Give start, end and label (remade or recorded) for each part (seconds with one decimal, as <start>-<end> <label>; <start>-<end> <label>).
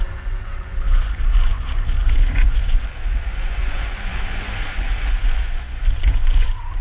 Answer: 0.0-6.8 remade